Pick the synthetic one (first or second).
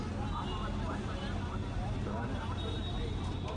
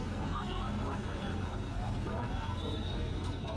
second